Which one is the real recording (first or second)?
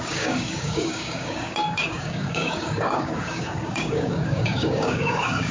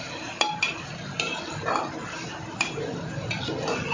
second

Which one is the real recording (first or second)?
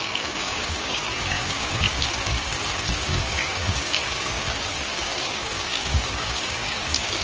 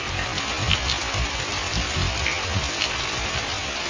second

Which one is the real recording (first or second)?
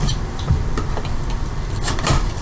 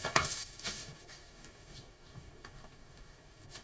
first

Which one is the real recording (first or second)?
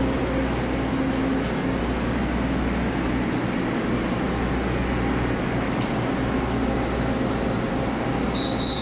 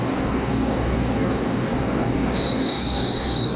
first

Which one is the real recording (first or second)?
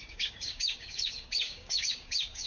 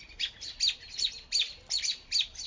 second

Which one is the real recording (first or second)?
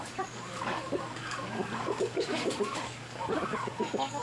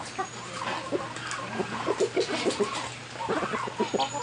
second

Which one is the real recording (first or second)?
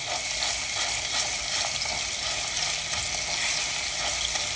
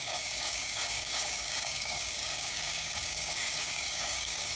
first